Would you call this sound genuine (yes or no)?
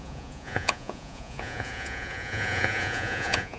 no